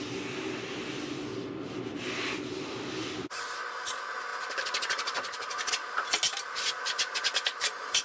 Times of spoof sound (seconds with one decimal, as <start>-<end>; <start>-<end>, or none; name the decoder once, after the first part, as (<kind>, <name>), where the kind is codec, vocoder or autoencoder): none